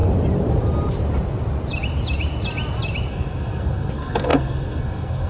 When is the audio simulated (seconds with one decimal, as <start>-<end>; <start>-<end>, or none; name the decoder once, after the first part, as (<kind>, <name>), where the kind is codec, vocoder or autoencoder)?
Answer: 3.1-5.3 (codec, SNAC)